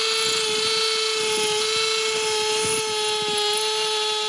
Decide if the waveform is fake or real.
real